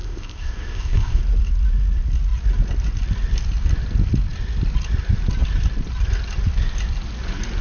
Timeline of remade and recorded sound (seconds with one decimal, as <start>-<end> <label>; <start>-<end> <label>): 0.0-1.2 remade; 1.2-7.6 recorded